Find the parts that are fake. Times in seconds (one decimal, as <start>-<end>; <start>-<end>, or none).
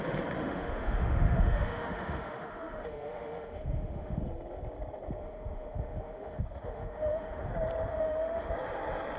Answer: 0.4-4.2; 5.2-7.5; 7.9-8.5